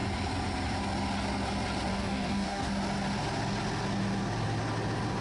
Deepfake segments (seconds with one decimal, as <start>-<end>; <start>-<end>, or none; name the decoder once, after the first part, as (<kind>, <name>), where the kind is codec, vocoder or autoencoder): 1.9-2.7 (codec, DAC)